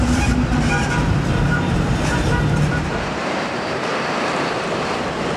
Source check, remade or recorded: remade